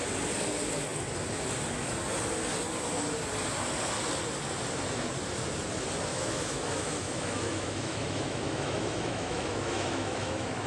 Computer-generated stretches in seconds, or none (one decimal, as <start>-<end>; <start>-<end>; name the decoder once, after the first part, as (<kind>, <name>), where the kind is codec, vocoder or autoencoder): 6.1-10.7 (autoencoder, DAC-VAE)